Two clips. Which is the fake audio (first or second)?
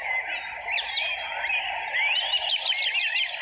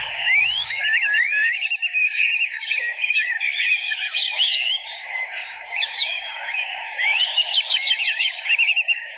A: second